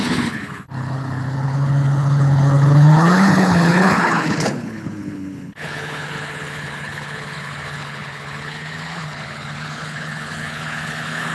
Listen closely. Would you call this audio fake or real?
fake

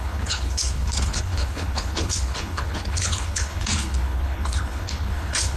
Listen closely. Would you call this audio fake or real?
fake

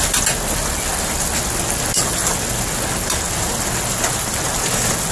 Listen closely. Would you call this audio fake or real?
real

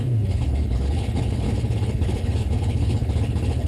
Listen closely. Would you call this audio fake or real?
fake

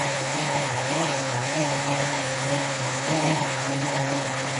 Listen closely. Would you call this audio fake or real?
fake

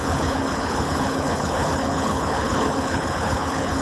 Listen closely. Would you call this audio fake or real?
fake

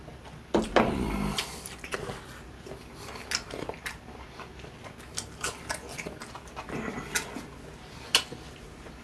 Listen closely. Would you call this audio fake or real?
real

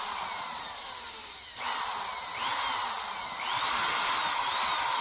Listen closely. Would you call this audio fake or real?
real